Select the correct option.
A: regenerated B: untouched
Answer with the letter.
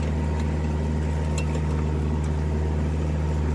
B